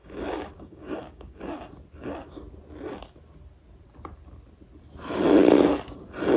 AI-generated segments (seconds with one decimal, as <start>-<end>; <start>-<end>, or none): 0.0-1.4